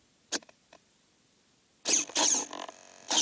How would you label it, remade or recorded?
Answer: recorded